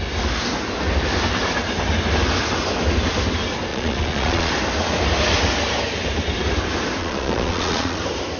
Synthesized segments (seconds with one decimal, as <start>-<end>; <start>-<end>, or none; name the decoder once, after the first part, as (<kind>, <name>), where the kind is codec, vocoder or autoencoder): 3.7-4.5 (vocoder, Vocos); 7.0-8.0